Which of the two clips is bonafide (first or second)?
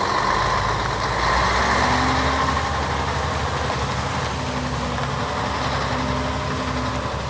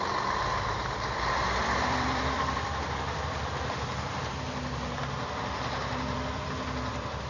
first